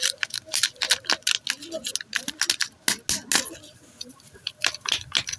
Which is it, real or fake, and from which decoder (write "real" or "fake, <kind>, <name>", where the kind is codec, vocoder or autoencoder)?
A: real